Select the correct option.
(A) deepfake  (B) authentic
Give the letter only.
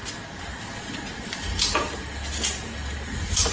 B